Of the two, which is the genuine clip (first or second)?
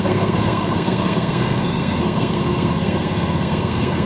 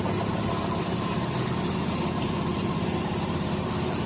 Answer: second